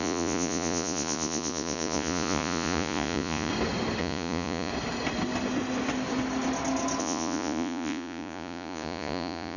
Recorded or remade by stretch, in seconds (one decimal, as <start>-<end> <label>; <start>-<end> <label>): 0.0-3.5 remade; 3.5-4.0 recorded; 4.0-4.7 remade; 4.7-7.0 recorded; 7.0-9.6 remade